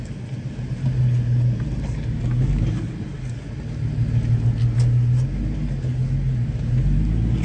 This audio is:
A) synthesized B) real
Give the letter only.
B